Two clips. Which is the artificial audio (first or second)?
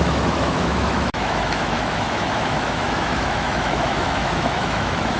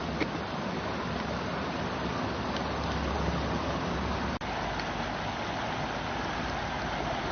first